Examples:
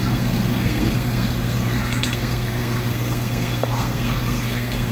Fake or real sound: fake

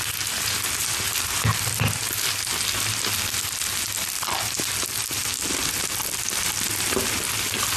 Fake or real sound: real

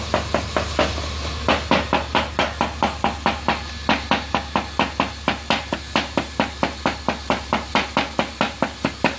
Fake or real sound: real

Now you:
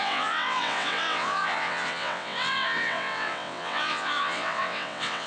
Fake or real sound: fake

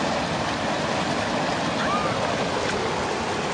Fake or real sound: real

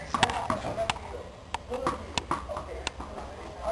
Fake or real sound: real